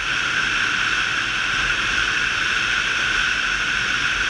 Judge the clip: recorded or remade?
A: remade